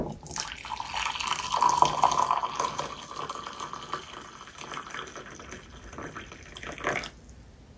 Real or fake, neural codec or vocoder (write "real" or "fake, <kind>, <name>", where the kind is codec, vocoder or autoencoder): real